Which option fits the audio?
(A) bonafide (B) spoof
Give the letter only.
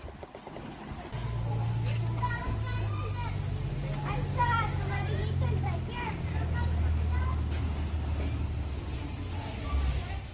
A